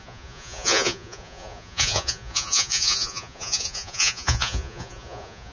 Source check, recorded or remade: remade